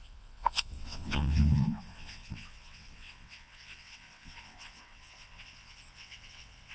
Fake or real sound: fake